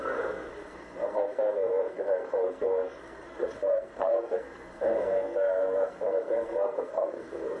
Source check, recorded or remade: remade